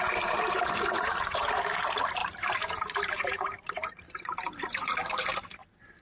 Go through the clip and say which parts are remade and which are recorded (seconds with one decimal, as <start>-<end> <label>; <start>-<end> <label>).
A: 0.0-6.0 remade